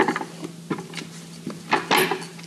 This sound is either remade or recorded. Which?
recorded